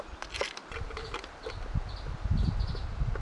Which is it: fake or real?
real